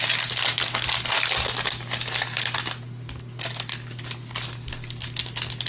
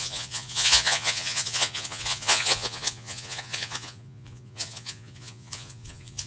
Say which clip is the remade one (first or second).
second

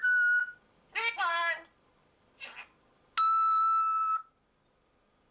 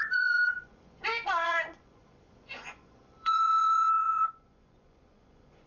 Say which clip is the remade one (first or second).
second